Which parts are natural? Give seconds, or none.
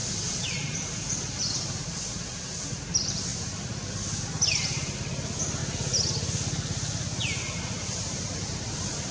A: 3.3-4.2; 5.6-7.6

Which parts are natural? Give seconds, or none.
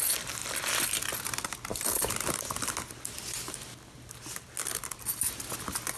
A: 0.0-6.0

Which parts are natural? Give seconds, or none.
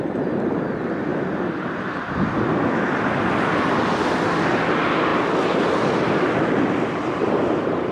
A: 0.0-7.9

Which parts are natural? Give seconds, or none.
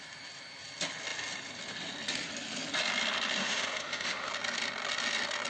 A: 0.0-3.4; 4.3-5.5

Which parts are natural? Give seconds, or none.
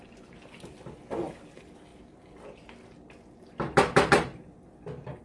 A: 0.0-5.2